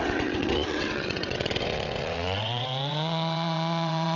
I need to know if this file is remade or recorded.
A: remade